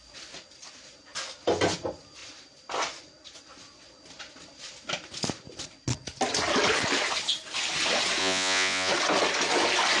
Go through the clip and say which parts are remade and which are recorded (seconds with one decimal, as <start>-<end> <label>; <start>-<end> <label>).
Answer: 0.0-8.2 recorded; 8.2-8.9 remade; 8.9-10.0 recorded